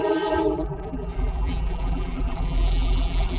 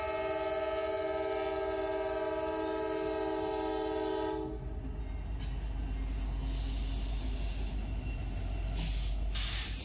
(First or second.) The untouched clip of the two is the second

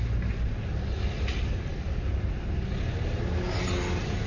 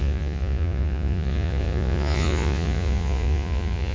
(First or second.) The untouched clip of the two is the first